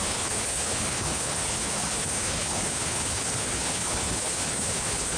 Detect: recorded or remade remade